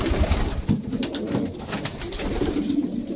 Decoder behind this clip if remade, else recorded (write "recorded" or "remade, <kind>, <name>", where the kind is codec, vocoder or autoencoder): recorded